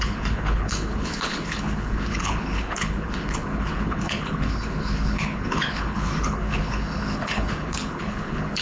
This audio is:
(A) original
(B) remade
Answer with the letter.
B